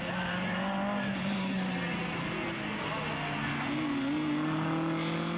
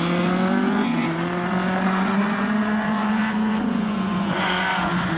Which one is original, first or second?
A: first